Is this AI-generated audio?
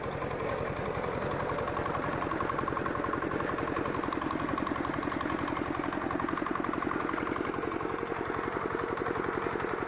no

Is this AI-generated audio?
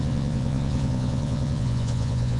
yes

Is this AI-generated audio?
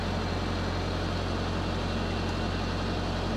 no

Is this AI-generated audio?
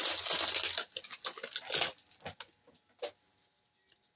no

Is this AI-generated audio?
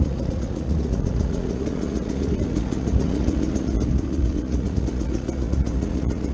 yes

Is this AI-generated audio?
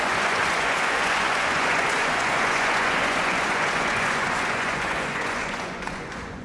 yes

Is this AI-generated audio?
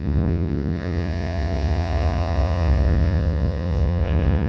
yes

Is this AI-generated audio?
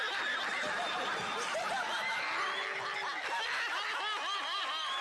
no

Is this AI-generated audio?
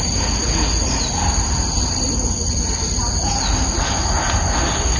no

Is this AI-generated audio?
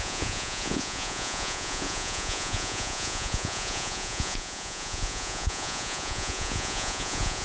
yes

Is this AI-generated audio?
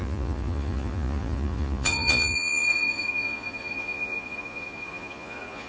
yes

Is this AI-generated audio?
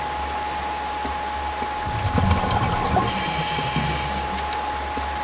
no